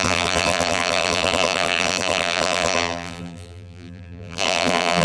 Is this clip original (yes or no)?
no